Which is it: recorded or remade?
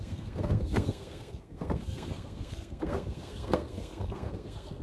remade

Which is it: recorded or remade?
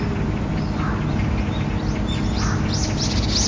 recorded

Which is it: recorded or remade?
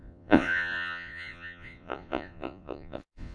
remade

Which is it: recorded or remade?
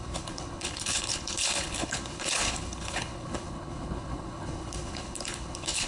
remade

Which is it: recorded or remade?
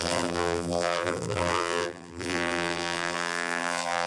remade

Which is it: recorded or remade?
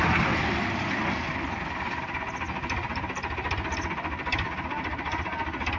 recorded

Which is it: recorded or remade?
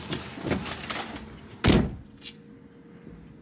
recorded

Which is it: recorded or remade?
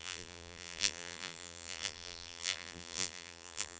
remade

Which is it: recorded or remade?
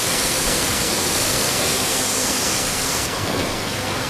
remade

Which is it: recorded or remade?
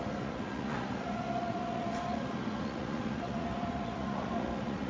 remade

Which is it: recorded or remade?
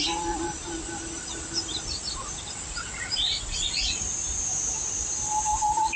recorded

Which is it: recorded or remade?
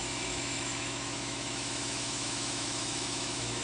remade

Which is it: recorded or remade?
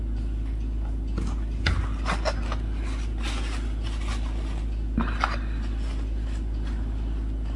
recorded